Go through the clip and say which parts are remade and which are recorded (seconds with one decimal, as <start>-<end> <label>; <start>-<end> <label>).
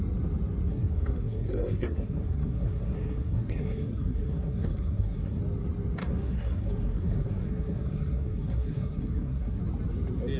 0.0-0.7 recorded; 0.7-5.4 remade; 5.4-6.0 recorded; 6.0-9.6 remade; 9.6-10.4 recorded